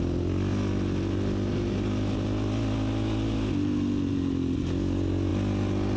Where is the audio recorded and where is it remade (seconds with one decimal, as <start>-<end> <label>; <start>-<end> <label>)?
0.0-6.0 recorded